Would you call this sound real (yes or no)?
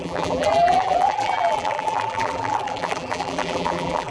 no